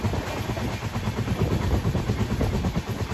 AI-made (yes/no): no